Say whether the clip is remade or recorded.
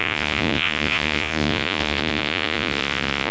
remade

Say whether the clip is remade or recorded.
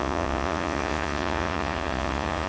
remade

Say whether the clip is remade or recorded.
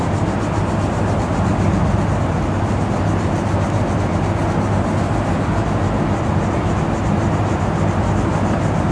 recorded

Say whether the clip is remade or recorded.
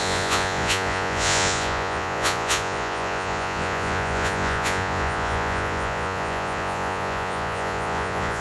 remade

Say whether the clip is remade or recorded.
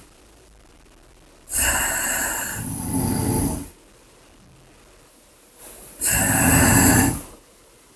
recorded